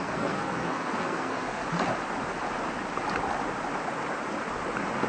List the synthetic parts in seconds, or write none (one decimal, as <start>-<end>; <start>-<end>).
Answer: 0.0-1.6